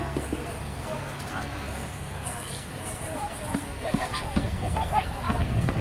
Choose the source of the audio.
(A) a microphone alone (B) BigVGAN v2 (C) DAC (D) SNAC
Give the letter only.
D